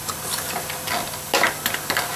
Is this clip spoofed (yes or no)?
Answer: no